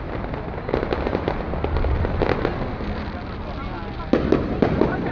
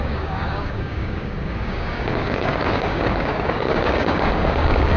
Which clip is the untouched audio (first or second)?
first